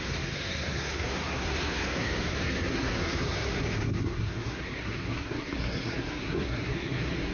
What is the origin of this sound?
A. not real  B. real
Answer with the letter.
A